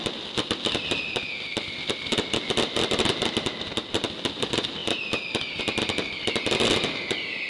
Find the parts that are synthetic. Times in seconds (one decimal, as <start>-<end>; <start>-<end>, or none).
none